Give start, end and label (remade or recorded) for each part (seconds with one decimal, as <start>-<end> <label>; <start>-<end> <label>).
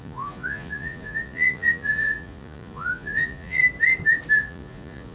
0.0-3.6 remade; 3.6-4.3 recorded; 4.3-5.1 remade